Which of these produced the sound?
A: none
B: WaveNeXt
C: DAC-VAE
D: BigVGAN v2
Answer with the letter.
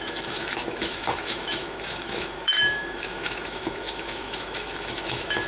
C